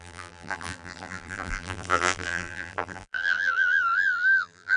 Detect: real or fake fake